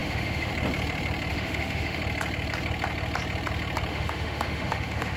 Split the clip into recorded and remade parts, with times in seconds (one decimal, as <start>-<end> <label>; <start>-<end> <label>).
0.0-0.5 remade; 0.5-1.3 recorded; 1.3-2.0 remade; 2.0-3.9 recorded; 3.9-5.2 remade